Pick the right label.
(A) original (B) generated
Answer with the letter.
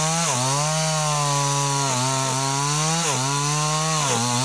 A